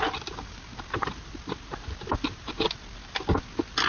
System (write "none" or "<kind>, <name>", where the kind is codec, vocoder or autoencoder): none